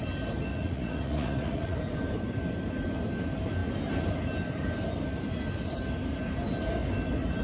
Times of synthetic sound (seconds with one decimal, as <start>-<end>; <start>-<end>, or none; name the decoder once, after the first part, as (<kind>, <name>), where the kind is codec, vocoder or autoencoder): 0.5-1.8 (vocoder, Vocos)